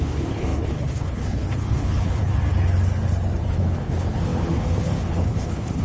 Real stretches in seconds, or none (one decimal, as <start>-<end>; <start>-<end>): 2.3-3.4